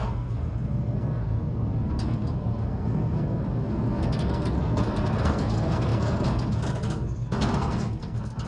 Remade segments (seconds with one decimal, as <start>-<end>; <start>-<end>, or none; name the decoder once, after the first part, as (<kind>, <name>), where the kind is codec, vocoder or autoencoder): 0.0-8.5 (codec, SNAC)